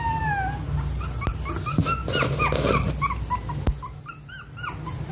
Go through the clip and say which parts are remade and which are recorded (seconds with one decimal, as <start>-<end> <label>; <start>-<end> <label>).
0.0-5.1 recorded

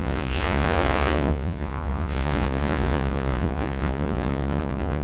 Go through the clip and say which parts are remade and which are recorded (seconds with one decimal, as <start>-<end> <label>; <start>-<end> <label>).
0.0-5.0 remade

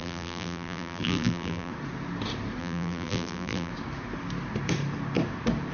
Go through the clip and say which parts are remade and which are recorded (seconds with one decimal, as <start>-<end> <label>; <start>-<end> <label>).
0.0-1.7 remade; 1.7-2.6 recorded; 2.6-3.7 remade; 3.7-5.7 recorded

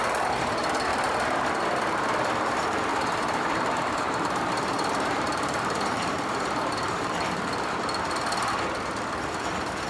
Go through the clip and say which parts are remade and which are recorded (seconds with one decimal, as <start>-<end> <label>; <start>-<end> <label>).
0.0-0.9 recorded; 0.9-1.5 remade; 1.5-2.9 recorded; 2.9-7.8 remade; 7.8-9.9 recorded

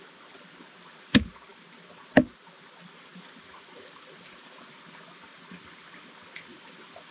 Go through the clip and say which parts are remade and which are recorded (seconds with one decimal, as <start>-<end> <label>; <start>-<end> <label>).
0.0-7.1 recorded

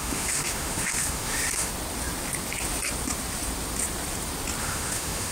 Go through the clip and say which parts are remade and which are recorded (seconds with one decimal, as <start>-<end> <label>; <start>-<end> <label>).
0.0-1.7 remade; 1.7-4.6 recorded; 4.6-5.3 remade